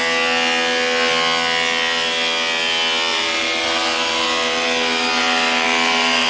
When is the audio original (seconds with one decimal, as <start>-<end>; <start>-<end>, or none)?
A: 0.0-3.1